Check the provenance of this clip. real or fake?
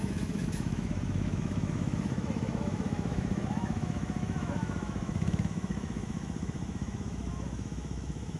fake